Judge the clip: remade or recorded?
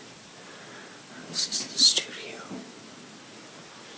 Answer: recorded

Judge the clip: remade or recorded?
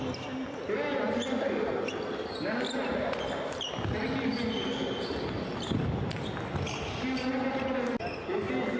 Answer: recorded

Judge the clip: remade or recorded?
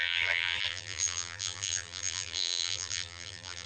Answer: remade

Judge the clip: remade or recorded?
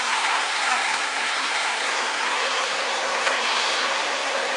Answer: remade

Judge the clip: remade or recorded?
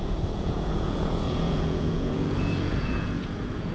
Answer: remade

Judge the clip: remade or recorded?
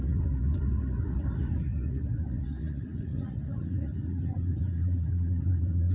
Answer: remade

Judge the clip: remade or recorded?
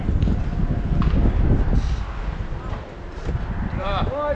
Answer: recorded